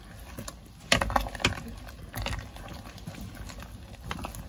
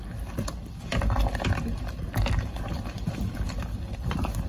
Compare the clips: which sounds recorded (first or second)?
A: first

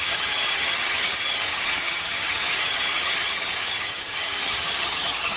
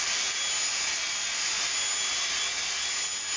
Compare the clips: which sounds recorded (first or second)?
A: second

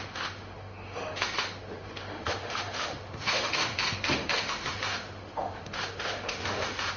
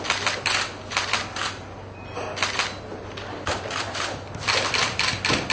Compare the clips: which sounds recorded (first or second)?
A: second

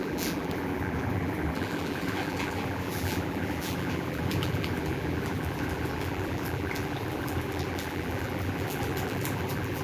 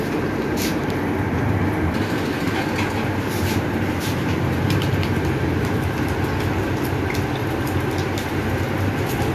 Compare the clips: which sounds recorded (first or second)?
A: second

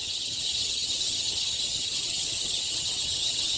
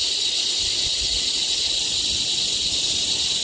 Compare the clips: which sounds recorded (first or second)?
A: second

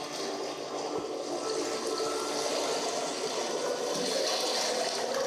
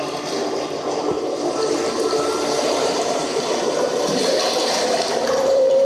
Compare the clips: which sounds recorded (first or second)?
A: first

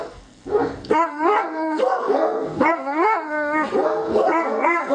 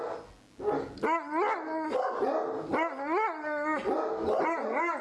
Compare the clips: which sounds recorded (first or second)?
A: second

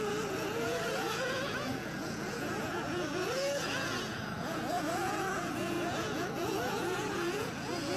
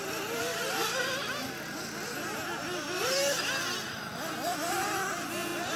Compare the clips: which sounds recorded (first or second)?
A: second